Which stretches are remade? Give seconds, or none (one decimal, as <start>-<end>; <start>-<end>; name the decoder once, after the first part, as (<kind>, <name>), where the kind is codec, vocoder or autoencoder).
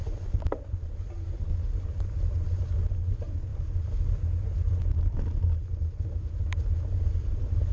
none